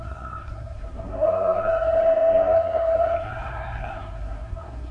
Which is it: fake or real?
fake